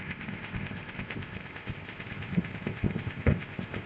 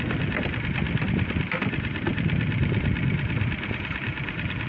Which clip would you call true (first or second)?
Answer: second